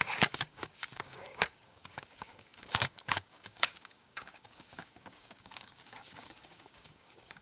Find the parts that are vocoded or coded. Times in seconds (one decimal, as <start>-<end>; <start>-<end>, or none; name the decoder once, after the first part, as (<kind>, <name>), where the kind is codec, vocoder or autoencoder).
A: 0.0-7.4 (codec, DAC)